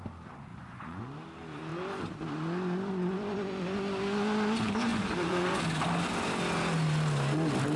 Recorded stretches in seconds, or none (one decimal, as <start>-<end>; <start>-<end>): 0.0-0.5; 1.0-4.9; 5.6-7.8